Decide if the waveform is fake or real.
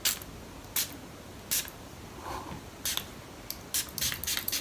real